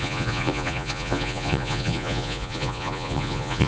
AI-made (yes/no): yes